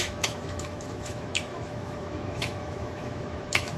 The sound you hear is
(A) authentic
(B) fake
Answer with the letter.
B